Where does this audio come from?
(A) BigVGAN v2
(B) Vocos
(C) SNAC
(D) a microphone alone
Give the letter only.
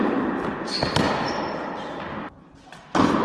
D